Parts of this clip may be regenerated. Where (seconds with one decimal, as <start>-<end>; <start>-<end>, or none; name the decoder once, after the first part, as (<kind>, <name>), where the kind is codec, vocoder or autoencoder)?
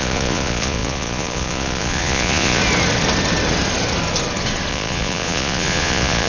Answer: 0.0-2.6 (vocoder, Vocos); 4.7-6.3